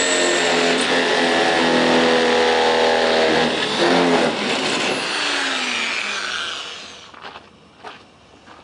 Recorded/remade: recorded